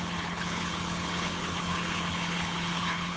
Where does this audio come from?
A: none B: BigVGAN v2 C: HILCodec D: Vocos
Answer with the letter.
C